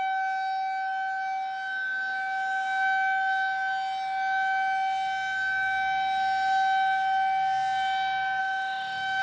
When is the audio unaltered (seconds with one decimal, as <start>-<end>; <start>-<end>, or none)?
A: 0.0-8.4